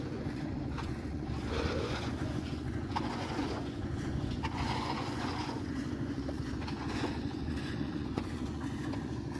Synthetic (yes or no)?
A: yes